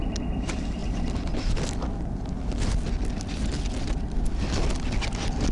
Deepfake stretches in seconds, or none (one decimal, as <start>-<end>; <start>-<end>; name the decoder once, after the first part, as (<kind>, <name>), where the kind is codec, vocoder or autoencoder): none